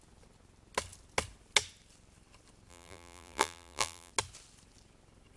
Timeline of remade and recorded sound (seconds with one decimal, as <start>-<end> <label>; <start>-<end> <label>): 0.0-2.7 recorded; 2.7-4.1 remade; 4.1-5.4 recorded